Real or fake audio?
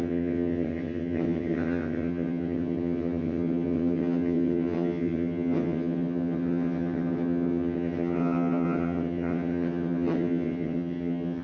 fake